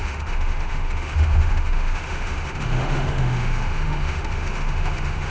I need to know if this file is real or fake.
fake